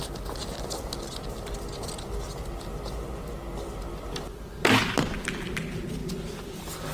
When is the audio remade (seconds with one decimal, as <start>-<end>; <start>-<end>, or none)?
none